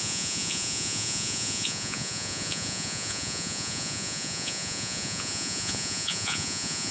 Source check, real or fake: fake